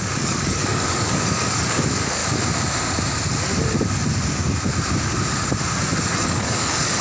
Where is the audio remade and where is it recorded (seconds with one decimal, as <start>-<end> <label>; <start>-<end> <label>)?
0.0-2.2 remade; 2.2-6.0 recorded; 6.0-7.0 remade